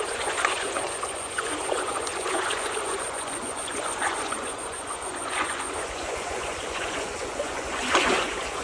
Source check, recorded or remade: remade